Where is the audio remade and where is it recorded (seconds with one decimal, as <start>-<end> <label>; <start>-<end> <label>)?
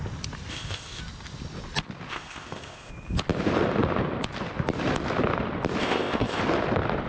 0.0-0.5 recorded; 0.5-1.0 remade; 1.0-2.1 recorded; 2.1-2.9 remade; 2.9-5.8 recorded; 5.8-6.4 remade; 6.4-7.1 recorded